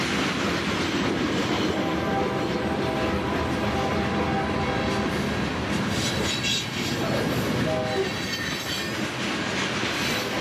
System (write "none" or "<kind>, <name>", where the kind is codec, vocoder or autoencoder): none